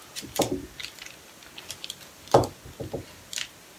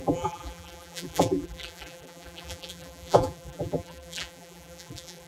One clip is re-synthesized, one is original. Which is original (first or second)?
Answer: first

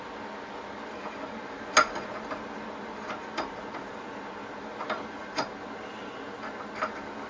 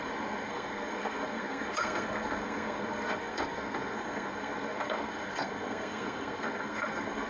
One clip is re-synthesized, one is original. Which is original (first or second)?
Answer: first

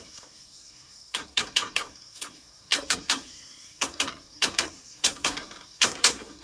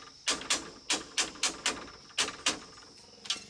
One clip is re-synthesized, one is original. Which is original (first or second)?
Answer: second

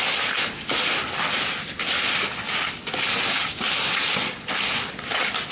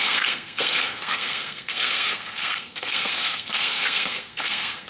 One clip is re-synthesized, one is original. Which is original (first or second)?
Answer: first